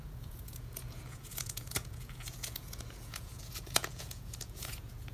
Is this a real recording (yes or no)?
no